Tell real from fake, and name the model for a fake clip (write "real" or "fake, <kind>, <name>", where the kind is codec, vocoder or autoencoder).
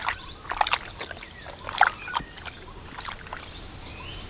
real